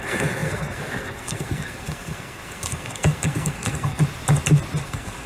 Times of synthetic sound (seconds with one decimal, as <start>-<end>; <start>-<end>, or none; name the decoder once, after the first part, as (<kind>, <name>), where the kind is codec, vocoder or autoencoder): 0.0-4.0 (codec, SNAC); 4.8-5.3